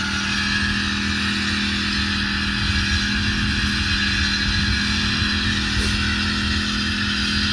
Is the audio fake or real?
real